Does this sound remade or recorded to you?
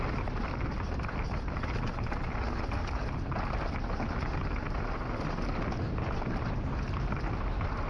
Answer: recorded